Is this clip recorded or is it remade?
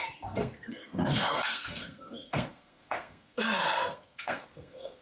remade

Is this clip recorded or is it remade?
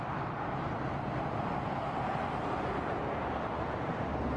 recorded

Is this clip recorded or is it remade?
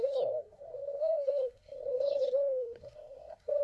remade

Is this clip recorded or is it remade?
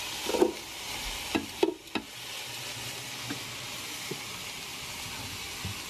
recorded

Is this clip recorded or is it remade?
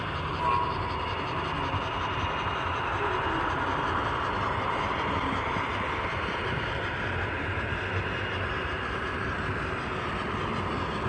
recorded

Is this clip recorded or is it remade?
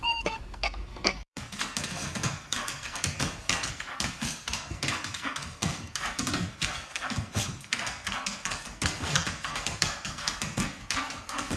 remade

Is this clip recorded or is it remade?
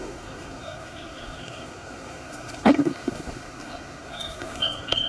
remade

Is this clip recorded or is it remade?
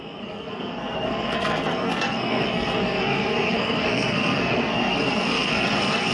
remade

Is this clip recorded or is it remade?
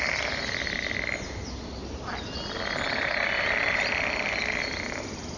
recorded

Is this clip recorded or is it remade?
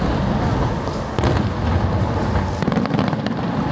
recorded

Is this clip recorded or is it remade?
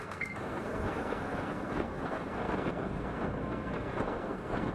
remade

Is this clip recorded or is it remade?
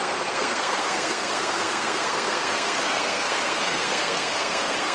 remade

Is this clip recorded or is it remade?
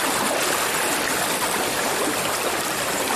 recorded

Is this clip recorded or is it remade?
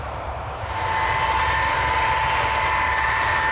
recorded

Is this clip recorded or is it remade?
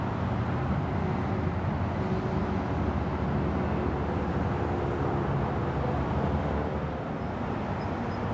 recorded